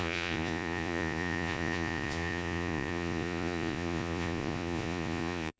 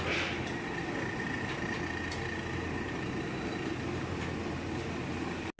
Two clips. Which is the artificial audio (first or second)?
first